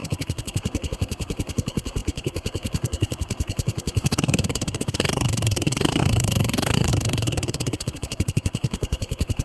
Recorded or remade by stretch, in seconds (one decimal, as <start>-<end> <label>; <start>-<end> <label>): 0.0-9.4 remade

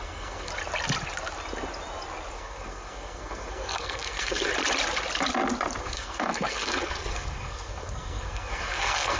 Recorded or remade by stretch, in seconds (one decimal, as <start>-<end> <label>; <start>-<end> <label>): 0.0-0.5 remade; 0.5-2.3 recorded; 2.3-4.5 remade; 4.5-5.8 recorded; 5.8-9.2 remade